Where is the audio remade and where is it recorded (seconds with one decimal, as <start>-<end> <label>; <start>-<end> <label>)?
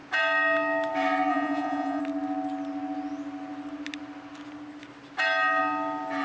0.0-1.3 recorded; 1.3-2.0 remade; 2.0-6.2 recorded